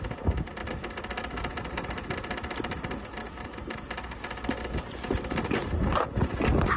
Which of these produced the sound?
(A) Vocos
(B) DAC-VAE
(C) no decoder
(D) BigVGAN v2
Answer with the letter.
C